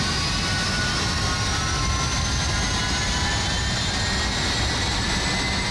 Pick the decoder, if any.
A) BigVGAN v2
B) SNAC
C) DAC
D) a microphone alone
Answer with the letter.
D